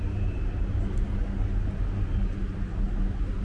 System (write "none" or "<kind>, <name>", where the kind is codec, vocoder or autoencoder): none